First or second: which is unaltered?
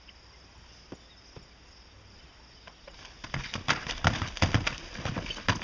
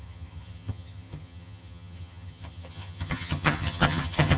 first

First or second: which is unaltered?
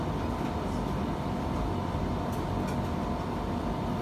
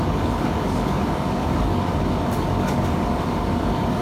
first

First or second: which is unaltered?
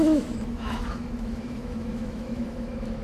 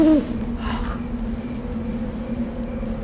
second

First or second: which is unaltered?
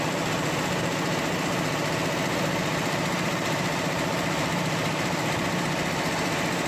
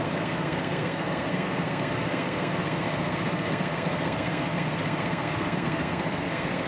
first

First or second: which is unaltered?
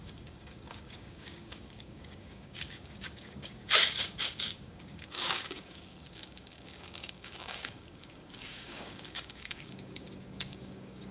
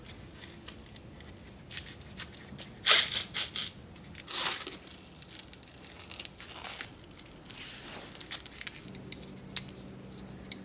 second